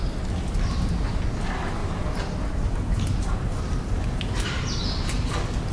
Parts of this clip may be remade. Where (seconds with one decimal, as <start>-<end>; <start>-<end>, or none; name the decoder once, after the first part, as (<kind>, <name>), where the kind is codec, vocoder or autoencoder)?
none